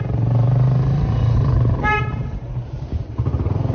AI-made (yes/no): yes